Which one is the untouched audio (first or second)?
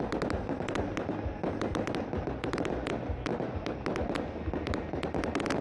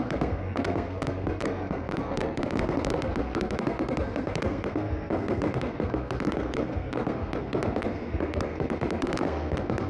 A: first